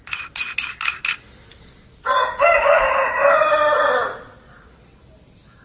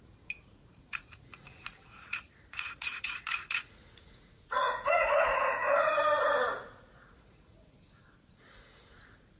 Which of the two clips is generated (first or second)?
second